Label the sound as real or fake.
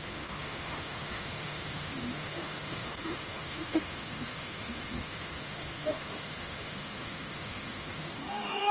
fake